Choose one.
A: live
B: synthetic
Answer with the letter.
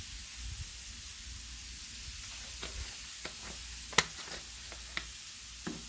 A